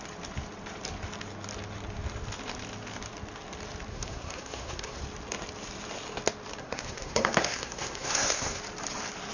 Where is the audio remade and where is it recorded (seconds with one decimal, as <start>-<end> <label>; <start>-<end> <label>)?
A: 0.0-3.9 recorded; 3.9-5.0 remade; 5.0-6.6 recorded; 6.6-8.6 remade; 8.6-9.3 recorded